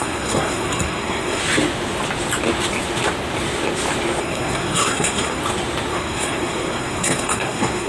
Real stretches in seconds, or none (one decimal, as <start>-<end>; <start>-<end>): 1.4-4.2; 5.4-5.9

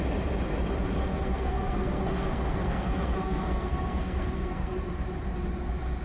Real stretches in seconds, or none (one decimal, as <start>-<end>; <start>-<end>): 0.0-1.1; 4.7-6.0

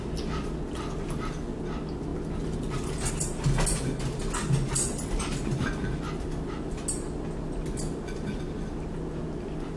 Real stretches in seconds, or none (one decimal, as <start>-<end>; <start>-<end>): 0.0-9.8

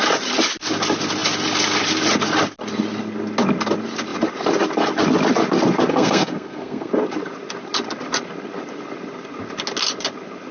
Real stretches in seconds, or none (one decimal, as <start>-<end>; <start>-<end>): 0.0-5.9; 6.9-10.5

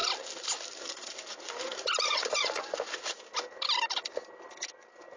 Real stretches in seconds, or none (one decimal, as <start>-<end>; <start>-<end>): 0.0-5.2